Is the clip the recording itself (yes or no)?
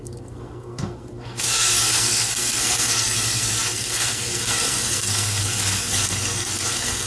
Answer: no